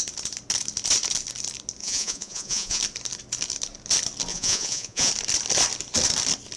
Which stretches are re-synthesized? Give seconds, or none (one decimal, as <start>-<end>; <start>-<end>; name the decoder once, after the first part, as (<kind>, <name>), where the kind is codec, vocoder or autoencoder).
1.8-2.8 (vocoder, Vocos); 4.3-5.1